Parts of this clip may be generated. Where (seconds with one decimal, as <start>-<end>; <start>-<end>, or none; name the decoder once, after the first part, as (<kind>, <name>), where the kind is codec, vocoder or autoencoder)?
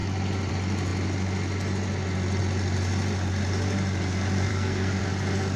4.5-5.0 (codec, SNAC)